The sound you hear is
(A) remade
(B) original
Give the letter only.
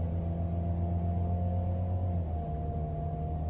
B